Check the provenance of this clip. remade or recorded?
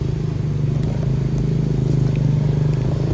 recorded